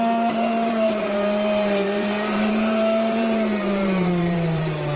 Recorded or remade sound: remade